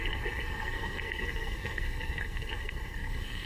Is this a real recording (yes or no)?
no